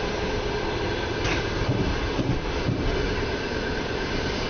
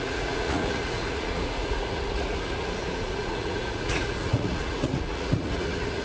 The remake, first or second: second